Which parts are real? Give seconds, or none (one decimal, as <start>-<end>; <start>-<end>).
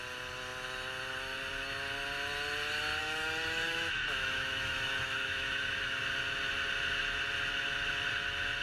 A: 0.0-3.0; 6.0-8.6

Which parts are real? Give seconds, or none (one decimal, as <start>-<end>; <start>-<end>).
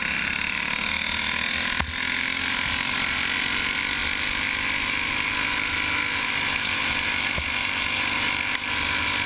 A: 0.0-9.3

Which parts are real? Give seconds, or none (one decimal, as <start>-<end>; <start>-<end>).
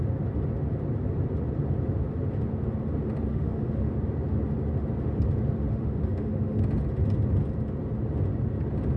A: 0.0-3.3; 3.9-5.7; 6.6-9.0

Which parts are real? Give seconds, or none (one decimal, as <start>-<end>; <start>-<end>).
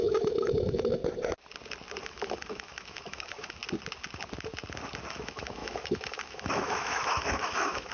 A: 1.0-2.0; 3.6-5.1